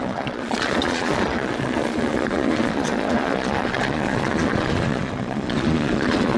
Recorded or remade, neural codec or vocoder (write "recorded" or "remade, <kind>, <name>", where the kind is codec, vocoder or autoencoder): remade, vocoder, Vocos